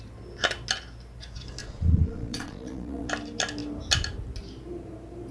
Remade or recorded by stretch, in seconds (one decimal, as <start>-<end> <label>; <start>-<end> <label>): 0.0-1.6 recorded; 1.6-3.1 remade; 3.1-5.3 recorded